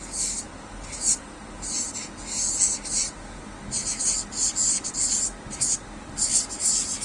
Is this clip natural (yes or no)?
yes